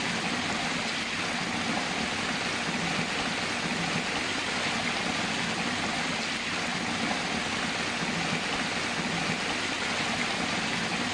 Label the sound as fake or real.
real